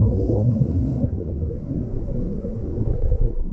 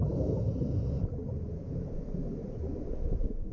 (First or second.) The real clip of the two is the second